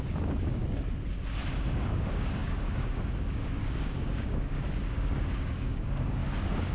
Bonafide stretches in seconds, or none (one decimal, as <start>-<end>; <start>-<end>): 0.6-1.6; 6.2-6.7